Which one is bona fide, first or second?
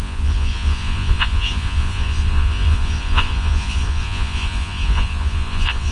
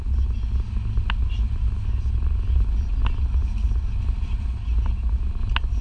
second